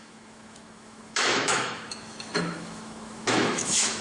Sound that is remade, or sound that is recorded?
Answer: remade